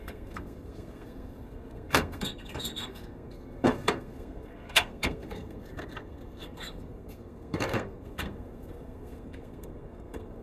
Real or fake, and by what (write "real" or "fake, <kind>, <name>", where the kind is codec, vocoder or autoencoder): fake, codec, SNAC